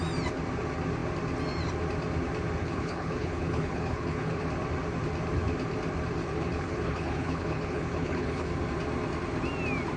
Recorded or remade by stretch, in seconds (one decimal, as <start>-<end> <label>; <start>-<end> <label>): 0.0-2.6 recorded; 2.6-4.4 remade; 4.4-6.2 recorded; 6.2-8.5 remade; 8.5-10.0 recorded